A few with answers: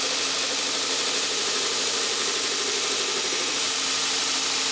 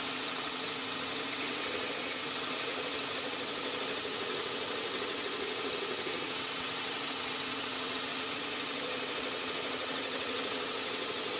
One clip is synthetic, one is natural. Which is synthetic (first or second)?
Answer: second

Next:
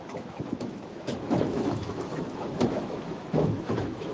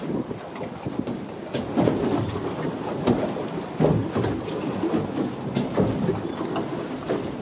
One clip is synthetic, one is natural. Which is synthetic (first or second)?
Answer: first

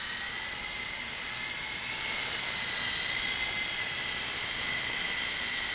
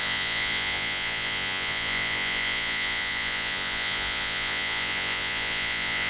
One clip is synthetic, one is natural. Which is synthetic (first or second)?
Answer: second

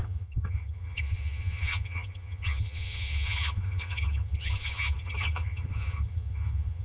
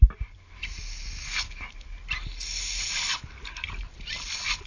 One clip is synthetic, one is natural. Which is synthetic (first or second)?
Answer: first